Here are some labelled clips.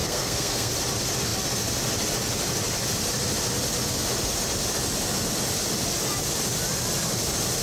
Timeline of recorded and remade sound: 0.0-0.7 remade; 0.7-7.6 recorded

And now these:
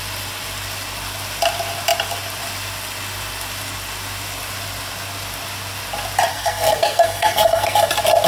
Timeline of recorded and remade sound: 0.0-6.3 recorded; 6.3-7.9 remade; 7.9-8.3 recorded

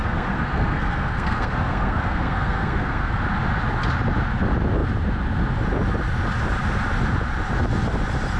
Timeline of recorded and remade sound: 0.0-3.2 remade; 3.2-8.4 recorded

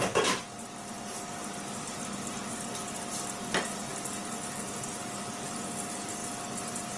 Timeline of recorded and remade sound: 0.0-7.0 recorded

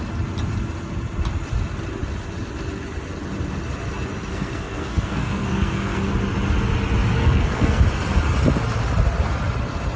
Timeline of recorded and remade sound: 0.0-4.3 recorded; 4.3-6.1 remade; 6.1-7.1 recorded; 7.1-7.8 remade; 7.8-10.0 recorded

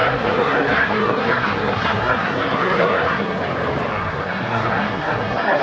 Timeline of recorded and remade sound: 0.0-3.4 remade; 3.4-3.9 recorded; 3.9-5.6 remade

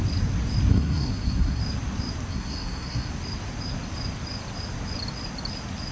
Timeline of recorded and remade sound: 0.0-0.7 recorded; 0.7-1.6 remade; 1.6-2.3 recorded; 2.3-3.1 remade; 3.1-5.9 recorded